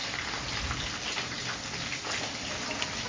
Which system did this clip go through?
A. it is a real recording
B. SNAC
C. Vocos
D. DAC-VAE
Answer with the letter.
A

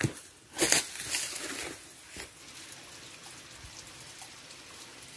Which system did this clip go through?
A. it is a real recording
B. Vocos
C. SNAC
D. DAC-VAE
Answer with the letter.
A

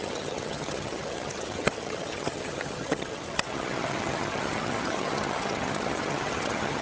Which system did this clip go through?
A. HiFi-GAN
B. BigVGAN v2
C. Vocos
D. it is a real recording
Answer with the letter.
A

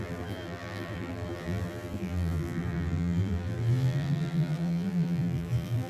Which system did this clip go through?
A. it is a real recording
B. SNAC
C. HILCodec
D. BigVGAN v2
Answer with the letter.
D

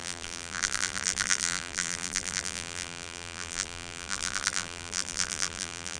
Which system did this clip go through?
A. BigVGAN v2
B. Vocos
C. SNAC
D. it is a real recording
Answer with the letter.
A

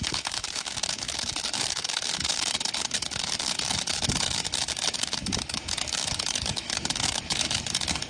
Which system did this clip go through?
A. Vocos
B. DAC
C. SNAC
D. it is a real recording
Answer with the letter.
B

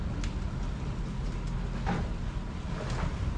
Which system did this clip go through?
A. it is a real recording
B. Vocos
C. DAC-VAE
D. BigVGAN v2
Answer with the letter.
A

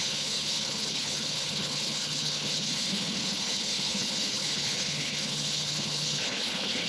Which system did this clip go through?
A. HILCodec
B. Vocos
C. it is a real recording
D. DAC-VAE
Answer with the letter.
A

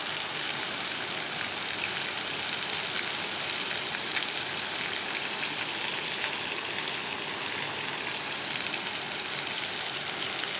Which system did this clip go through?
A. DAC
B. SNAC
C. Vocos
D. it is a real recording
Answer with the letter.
D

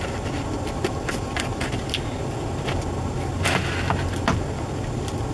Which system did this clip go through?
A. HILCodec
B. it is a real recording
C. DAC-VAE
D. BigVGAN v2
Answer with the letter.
B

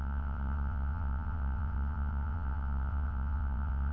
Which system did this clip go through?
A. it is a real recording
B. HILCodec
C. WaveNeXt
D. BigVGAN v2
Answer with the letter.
C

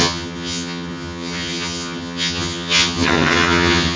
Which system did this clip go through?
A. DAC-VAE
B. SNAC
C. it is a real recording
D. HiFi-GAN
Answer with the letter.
D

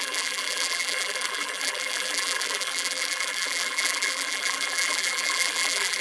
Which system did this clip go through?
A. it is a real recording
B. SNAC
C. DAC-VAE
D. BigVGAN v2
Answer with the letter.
D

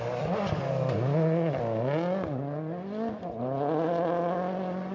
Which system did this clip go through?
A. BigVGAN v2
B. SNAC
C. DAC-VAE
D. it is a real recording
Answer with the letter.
D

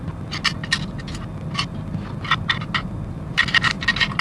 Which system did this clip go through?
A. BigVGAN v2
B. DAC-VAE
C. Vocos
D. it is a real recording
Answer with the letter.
D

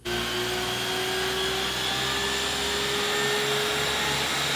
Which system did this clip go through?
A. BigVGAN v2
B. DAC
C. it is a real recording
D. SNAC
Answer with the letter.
C